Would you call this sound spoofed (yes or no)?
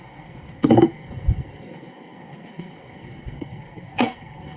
yes